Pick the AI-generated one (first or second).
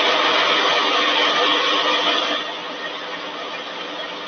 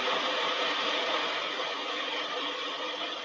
second